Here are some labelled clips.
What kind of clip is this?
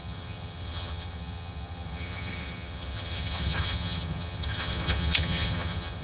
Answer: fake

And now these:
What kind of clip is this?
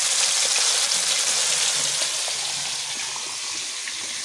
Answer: real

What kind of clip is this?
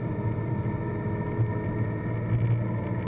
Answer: real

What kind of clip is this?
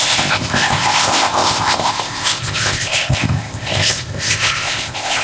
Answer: fake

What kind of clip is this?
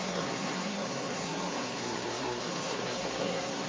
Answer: fake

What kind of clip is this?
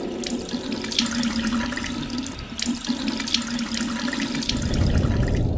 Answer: real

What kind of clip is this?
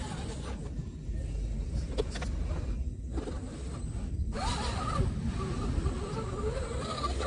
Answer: real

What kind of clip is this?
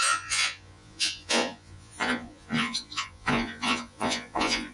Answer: fake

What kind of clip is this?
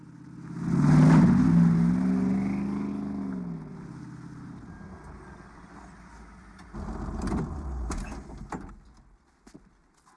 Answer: real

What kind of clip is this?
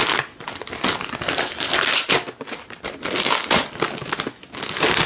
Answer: real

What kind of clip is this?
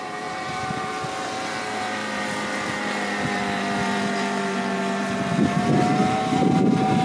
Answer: fake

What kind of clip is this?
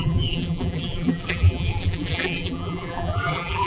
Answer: fake